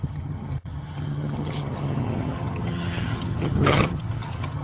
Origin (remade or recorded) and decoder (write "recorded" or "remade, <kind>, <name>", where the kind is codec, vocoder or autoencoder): remade, vocoder, HiFi-GAN